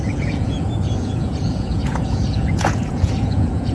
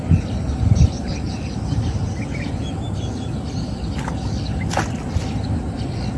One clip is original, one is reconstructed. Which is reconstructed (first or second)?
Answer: first